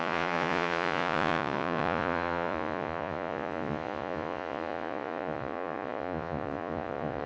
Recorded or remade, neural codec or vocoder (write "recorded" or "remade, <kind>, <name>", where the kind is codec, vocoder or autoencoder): remade, vocoder, Vocos